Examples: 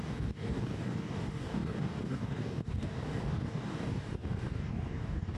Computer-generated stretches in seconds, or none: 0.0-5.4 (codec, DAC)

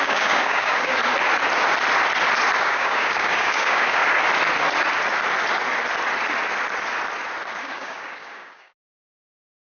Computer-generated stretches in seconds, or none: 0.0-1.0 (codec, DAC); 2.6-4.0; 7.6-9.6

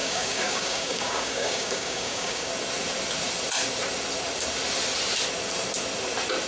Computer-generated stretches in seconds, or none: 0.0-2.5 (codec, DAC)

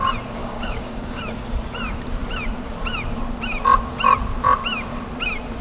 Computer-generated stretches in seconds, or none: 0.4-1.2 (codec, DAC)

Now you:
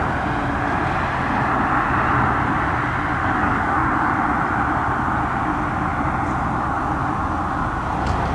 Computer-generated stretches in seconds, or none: 3.2-4.1 (codec, DAC)

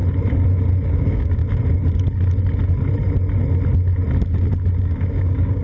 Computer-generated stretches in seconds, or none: 0.9-1.4 (codec, DAC); 4.8-5.6